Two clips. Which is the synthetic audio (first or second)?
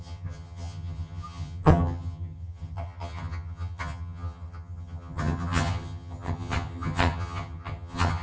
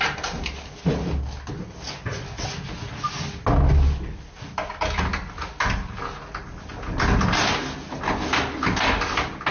first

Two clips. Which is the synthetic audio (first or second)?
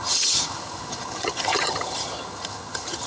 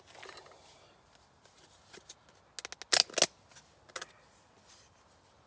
first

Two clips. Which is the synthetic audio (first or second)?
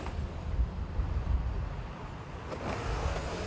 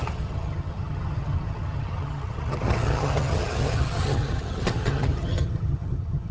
second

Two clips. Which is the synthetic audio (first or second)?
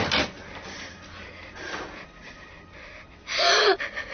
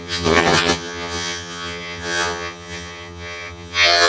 second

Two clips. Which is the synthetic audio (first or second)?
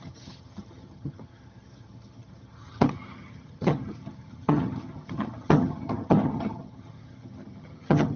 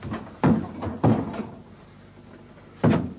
first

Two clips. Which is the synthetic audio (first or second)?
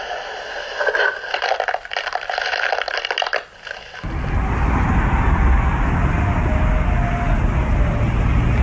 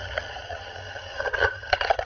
second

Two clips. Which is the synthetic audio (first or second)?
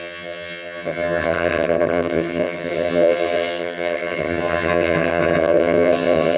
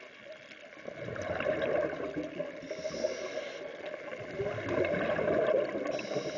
first